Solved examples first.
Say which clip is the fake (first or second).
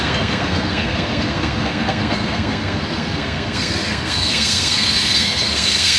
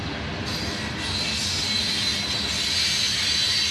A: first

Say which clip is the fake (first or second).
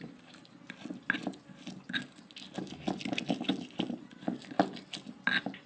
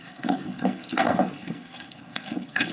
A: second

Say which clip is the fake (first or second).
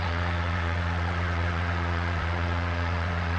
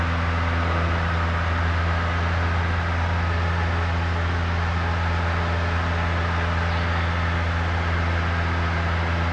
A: first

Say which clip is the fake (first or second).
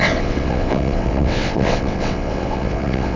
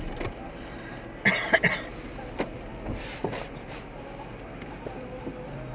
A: first